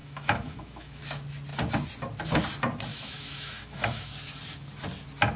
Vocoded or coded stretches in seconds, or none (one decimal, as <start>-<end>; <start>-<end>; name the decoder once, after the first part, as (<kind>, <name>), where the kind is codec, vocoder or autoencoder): 0.0-1.0 (autoencoder, DAC-VAE); 2.9-4.1